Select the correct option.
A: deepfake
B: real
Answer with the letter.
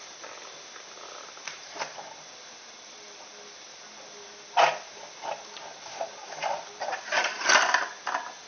B